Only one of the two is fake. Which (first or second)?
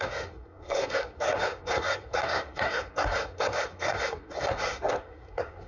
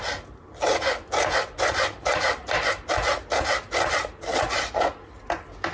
first